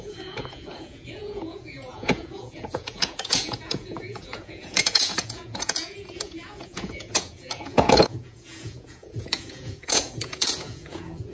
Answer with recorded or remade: remade